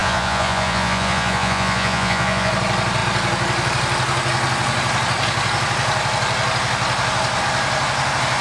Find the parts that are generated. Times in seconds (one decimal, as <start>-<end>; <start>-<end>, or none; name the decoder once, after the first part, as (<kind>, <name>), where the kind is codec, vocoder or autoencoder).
0.0-2.5 (vocoder, Vocos)